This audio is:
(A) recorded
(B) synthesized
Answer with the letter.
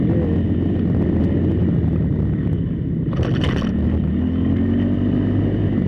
A